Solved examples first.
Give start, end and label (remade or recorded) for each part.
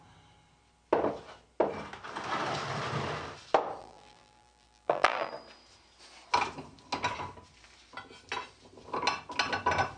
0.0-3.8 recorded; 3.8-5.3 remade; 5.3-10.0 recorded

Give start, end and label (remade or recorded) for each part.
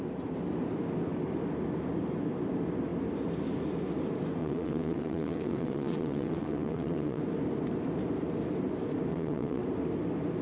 0.0-4.4 recorded; 4.4-7.2 remade; 7.2-9.1 recorded; 9.1-9.6 remade; 9.6-10.4 recorded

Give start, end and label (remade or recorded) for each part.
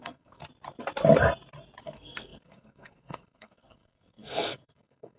0.0-0.4 remade; 0.4-1.8 recorded; 1.8-5.2 remade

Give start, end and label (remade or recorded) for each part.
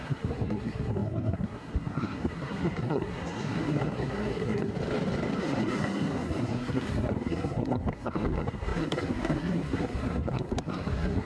0.0-4.7 remade; 4.7-5.4 recorded; 5.4-11.3 remade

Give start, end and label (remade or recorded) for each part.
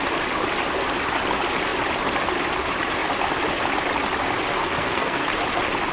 0.0-4.6 recorded; 4.6-5.3 remade; 5.3-5.9 recorded